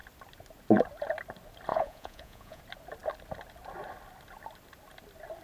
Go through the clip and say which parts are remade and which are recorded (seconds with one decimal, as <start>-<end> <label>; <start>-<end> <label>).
0.0-1.7 recorded; 1.7-2.6 remade; 2.6-5.4 recorded